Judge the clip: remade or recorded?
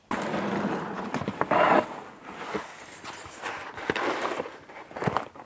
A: recorded